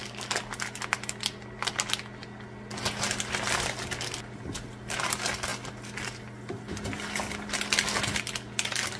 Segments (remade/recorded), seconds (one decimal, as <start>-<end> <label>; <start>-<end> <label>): 0.0-9.0 recorded